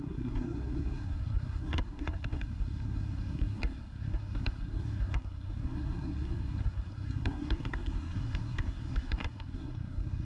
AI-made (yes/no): yes